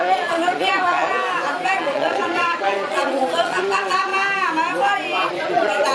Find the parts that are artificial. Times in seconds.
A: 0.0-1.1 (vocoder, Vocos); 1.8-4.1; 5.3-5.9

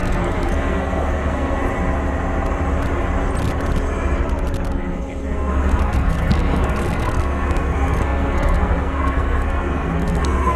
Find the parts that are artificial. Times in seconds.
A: 0.0-1.6 (codec, SNAC); 4.7-10.6

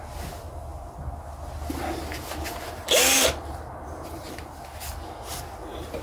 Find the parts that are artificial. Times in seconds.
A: none

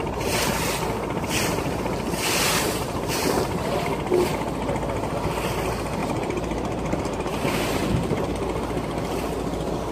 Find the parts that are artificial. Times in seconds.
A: 6.0-8.3 (vocoder, BigVGAN v2)

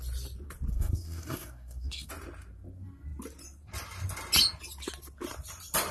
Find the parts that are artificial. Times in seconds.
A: 0.7-2.1 (codec, SNAC)

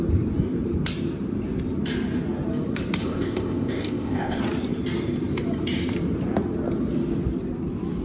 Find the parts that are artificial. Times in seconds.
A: 3.0-4.4 (codec, ZipCodec)

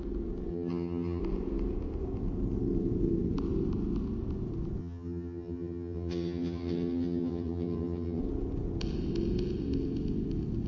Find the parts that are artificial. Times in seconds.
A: 0.5-1.2 (vocoder, HiFi-GAN); 4.8-8.2

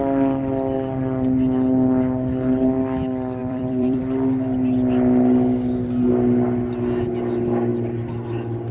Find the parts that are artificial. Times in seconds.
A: 3.4-4.0 (vocoder, BigVGAN v2)